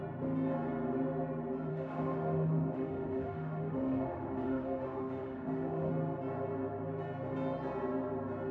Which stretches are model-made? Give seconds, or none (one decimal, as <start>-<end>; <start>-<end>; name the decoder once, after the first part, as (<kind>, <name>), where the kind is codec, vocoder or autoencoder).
1.7-5.9 (autoencoder, DAC-VAE)